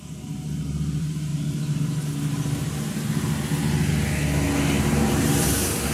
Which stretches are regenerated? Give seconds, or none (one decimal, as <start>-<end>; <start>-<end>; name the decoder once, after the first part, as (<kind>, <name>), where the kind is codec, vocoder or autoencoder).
0.0-1.3 (vocoder, BigVGAN v2); 4.8-5.9